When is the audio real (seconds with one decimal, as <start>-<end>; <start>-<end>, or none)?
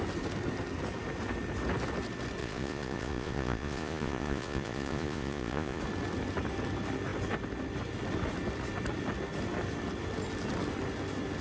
0.0-2.4; 5.8-11.4